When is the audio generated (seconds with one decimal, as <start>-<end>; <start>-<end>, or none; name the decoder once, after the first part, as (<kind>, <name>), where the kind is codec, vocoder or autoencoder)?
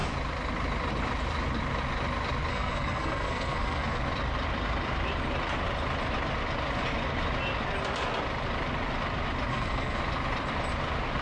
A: 2.5-4.0 (codec, SNAC); 9.5-10.0